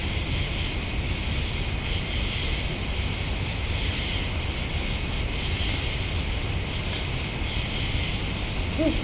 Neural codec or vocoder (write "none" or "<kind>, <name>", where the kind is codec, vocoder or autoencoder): none